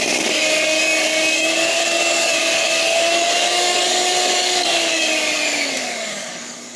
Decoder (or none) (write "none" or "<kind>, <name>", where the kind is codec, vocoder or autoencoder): codec, DAC